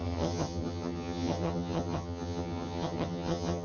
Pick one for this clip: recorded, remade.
remade